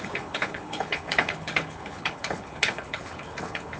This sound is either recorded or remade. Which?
remade